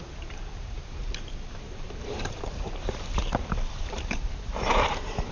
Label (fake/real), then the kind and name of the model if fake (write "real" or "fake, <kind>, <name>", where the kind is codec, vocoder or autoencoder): fake, vocoder, BigVGAN v2